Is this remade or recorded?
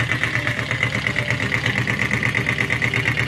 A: recorded